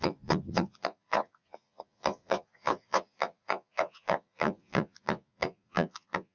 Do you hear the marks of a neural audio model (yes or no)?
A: yes